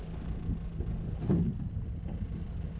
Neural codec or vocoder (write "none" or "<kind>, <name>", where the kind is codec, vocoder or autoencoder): none